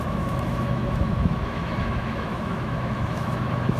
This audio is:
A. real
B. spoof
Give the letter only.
B